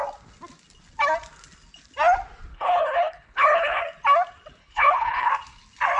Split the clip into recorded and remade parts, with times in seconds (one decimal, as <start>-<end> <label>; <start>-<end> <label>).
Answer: 0.0-2.5 recorded; 2.5-3.8 remade; 3.8-4.6 recorded; 4.6-5.3 remade; 5.3-6.0 recorded